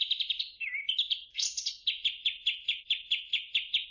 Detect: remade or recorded recorded